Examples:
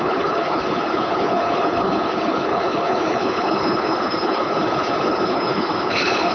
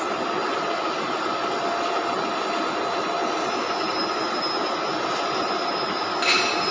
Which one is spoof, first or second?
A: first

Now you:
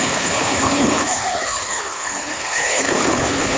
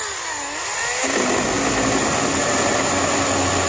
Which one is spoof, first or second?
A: first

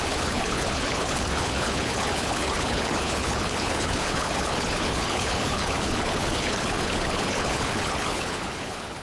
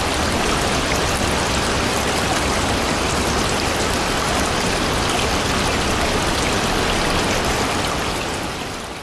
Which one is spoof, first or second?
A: first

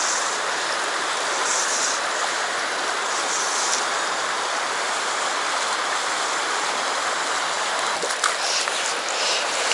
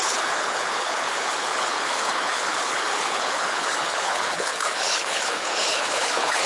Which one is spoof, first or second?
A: second